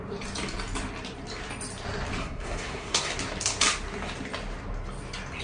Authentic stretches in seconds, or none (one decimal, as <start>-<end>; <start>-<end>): 0.0-2.2; 3.1-5.4